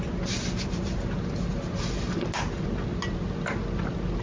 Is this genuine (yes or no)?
yes